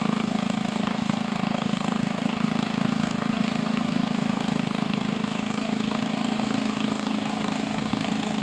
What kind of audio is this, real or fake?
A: fake